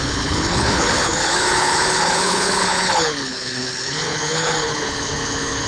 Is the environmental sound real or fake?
fake